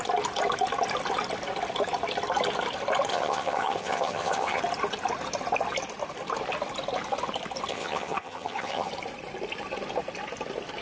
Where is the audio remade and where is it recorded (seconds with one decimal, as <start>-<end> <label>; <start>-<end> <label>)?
0.0-3.1 recorded; 3.1-4.6 remade; 4.6-7.7 recorded; 7.7-8.9 remade; 8.9-10.8 recorded